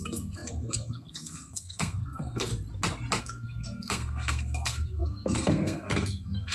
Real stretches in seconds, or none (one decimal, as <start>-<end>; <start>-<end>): 2.5-3.2